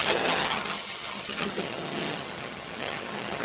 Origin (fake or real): fake